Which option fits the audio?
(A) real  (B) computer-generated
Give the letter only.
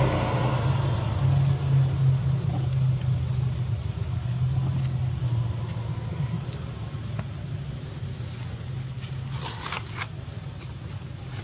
A